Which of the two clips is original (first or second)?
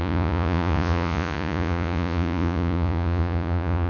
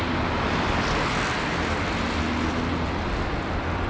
second